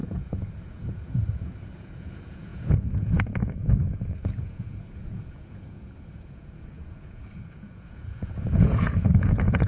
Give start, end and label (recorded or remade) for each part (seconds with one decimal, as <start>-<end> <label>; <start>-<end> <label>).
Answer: 0.0-9.7 remade